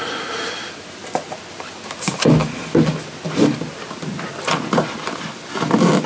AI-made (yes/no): no